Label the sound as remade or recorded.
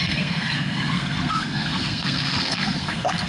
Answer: remade